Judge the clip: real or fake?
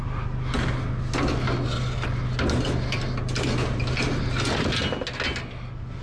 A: real